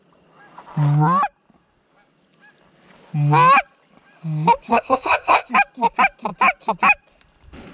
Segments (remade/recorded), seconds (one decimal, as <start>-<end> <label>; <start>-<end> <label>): 0.0-4.7 recorded; 4.7-5.5 remade; 5.5-7.7 recorded